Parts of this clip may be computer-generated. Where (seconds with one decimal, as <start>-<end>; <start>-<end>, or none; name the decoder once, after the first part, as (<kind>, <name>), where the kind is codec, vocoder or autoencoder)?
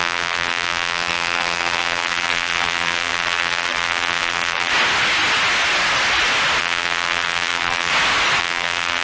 0.0-4.7 (vocoder, BigVGAN v2); 6.6-7.9; 8.4-9.0